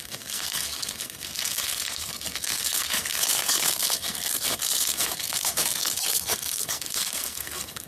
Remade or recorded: remade